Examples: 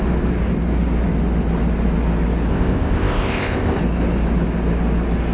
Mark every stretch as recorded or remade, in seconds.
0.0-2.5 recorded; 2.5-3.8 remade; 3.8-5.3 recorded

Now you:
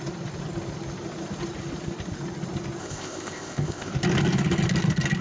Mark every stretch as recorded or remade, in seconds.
0.0-2.8 recorded; 2.8-3.9 remade; 3.9-5.2 recorded

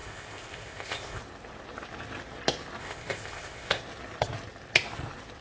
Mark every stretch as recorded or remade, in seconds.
0.0-1.2 remade; 1.2-2.8 recorded; 2.8-3.8 remade; 3.8-5.4 recorded

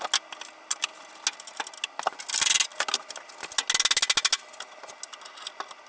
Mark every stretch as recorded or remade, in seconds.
0.0-5.9 recorded

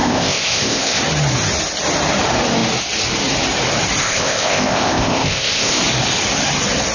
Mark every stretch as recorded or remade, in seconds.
0.0-1.0 remade; 1.0-4.0 recorded; 4.0-5.8 remade; 5.8-6.9 recorded

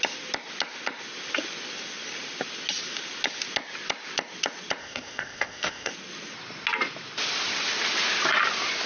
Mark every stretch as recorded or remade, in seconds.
0.0-4.8 recorded; 4.8-5.9 remade; 5.9-8.9 recorded